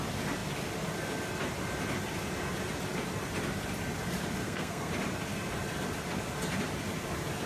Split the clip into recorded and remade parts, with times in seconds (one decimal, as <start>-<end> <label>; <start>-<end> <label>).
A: 0.0-4.4 recorded; 4.4-4.9 remade; 4.9-7.5 recorded